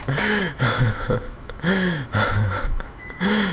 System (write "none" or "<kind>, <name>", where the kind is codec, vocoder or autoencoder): autoencoder, DAC-VAE